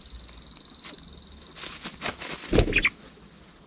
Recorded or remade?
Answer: recorded